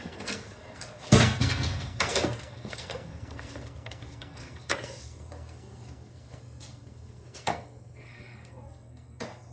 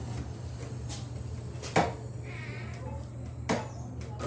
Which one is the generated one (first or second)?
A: first